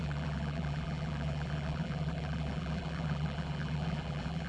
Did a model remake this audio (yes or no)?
yes